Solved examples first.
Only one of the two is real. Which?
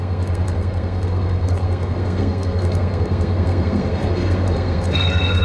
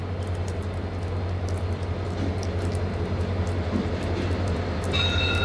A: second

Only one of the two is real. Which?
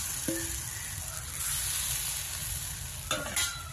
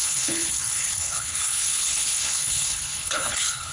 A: first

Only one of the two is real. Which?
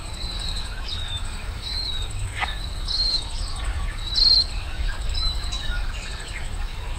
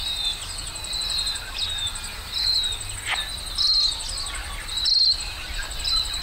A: second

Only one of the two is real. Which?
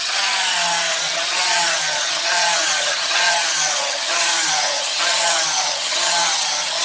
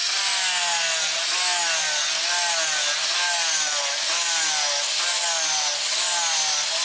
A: second